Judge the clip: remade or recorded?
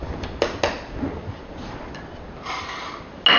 recorded